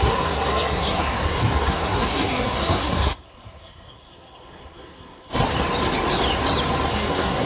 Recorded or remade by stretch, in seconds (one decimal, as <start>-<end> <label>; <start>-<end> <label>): 0.0-5.3 remade; 5.3-6.9 recorded; 6.9-7.5 remade

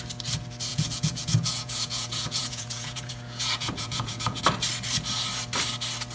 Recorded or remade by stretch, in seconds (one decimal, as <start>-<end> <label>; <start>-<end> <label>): 0.0-0.7 recorded; 0.7-4.4 remade; 4.4-6.1 recorded

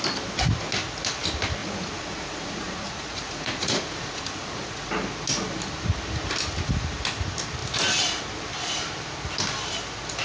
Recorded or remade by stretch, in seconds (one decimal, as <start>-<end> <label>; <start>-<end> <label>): 0.0-1.6 recorded; 1.6-4.9 remade; 4.9-10.2 recorded

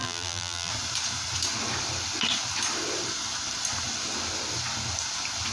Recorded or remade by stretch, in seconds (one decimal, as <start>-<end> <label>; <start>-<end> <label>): 0.0-0.7 remade; 0.7-5.5 recorded

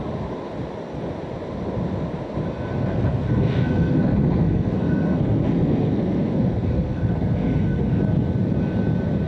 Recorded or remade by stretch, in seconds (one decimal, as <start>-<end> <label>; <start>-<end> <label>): 0.0-2.8 recorded; 2.8-8.0 remade; 8.0-9.3 recorded

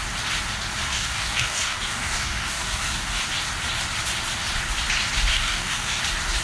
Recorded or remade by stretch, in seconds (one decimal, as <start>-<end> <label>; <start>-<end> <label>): 0.0-0.9 recorded; 0.9-3.2 remade; 3.2-5.3 recorded; 5.3-6.0 remade; 6.0-6.4 recorded

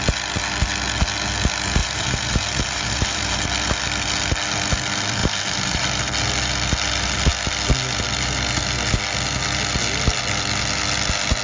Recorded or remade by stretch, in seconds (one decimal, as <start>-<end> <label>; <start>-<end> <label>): 0.0-1.8 recorded; 1.8-3.4 remade; 3.4-5.2 recorded; 5.2-6.0 remade; 6.0-11.4 recorded